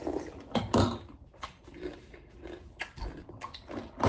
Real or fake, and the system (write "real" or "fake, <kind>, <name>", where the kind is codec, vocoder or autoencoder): real